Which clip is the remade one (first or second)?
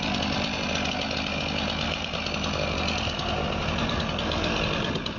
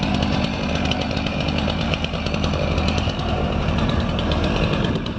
second